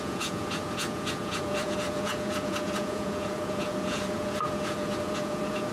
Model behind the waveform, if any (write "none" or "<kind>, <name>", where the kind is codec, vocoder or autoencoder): vocoder, Vocos